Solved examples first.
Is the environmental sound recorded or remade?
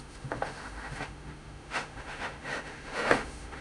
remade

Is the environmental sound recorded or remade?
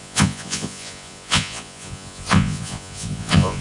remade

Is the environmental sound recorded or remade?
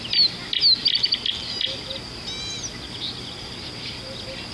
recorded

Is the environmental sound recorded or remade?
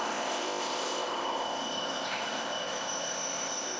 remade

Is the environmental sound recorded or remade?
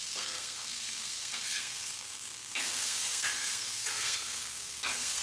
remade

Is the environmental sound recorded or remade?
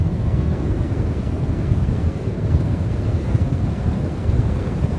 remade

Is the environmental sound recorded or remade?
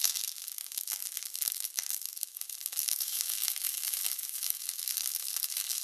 remade